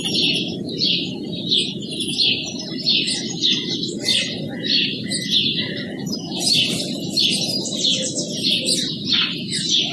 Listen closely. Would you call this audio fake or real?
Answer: real